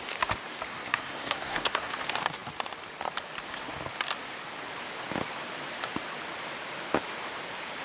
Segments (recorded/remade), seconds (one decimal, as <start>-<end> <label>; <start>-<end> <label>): 0.0-0.7 recorded; 0.7-1.9 remade; 1.9-7.8 recorded